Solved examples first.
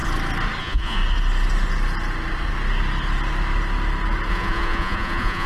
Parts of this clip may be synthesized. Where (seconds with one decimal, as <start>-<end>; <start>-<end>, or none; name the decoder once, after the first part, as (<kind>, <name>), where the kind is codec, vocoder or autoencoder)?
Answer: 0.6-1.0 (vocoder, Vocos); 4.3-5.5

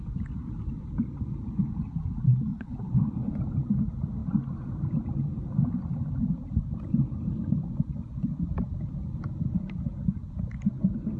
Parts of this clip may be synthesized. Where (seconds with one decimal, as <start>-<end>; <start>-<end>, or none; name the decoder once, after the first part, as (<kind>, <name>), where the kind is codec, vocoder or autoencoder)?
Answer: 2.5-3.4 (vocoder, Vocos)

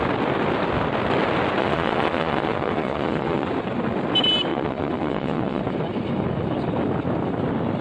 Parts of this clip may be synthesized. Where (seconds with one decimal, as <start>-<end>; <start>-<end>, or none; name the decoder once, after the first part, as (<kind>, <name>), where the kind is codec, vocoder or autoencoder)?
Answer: 1.6-3.5 (vocoder, Vocos); 4.5-5.6

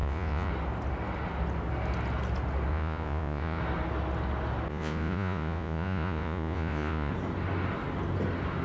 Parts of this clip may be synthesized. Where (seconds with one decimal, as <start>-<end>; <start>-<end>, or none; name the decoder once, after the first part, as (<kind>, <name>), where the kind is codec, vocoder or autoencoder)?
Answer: 0.0-0.5 (vocoder, Vocos); 2.7-3.6; 4.7-7.1